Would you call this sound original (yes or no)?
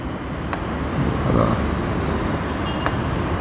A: yes